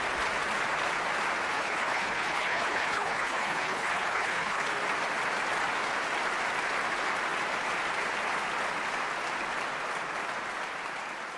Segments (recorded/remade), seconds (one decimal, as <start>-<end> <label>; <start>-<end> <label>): 0.0-1.5 recorded; 1.5-4.6 remade; 4.6-11.4 recorded